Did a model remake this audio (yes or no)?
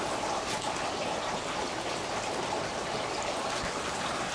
no